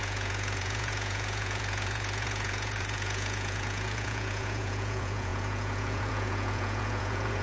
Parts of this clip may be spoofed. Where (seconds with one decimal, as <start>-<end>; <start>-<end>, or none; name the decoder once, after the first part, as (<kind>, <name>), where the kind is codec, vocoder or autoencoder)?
0.0-7.4 (vocoder, Vocos)